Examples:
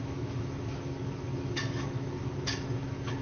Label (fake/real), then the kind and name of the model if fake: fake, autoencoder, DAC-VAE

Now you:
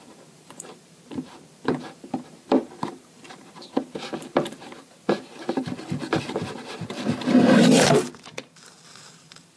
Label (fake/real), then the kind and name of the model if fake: fake, vocoder, BigVGAN v2